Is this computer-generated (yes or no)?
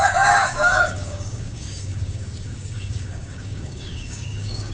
yes